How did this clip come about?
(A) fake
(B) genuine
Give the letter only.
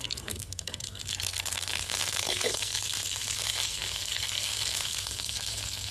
A